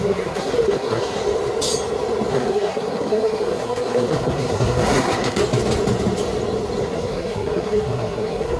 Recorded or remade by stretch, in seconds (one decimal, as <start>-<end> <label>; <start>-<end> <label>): 0.0-1.2 remade; 1.2-2.3 recorded; 2.3-5.4 remade; 5.4-6.8 recorded; 6.8-8.6 remade